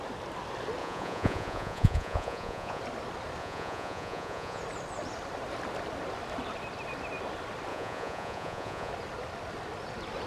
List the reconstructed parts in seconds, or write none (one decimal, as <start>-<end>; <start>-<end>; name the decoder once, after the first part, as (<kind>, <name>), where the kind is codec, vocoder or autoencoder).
0.8-2.8 (vocoder, Vocos); 3.4-4.6; 7.7-8.9